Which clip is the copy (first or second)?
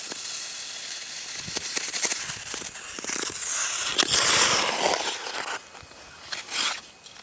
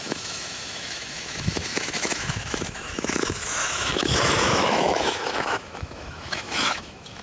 second